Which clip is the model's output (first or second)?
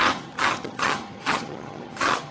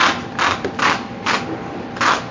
first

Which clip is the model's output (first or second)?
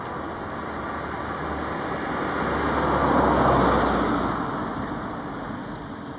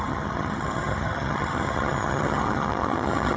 second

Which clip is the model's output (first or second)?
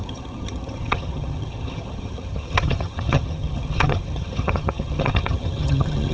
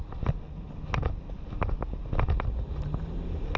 first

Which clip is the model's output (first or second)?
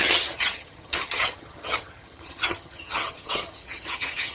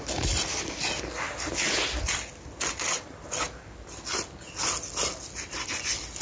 first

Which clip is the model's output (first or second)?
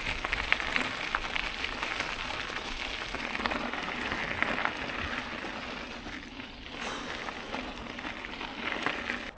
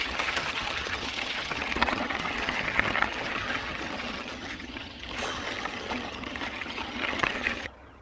second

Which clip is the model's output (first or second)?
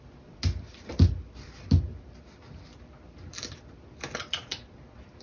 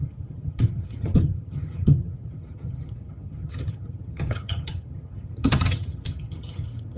second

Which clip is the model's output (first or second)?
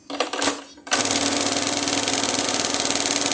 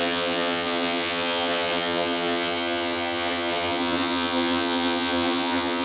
second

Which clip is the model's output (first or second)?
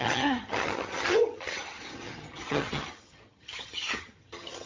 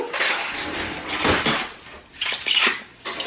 first